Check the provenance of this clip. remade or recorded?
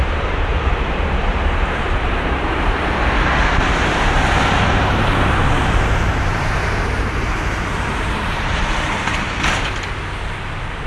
remade